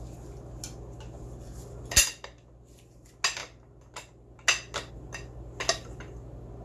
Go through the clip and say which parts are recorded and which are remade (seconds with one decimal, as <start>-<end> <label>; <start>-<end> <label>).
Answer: 0.0-6.6 recorded